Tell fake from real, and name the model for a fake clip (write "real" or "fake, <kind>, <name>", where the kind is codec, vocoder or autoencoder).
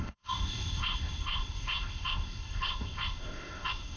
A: fake, codec, ZipCodec